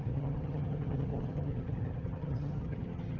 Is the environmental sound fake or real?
fake